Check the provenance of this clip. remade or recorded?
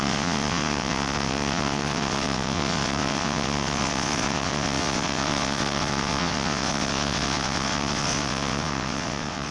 remade